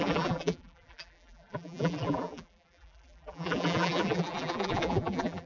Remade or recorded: remade